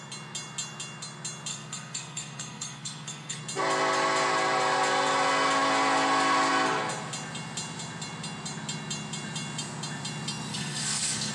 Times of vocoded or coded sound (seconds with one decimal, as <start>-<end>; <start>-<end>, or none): 1.5-3.4; 10.5-11.3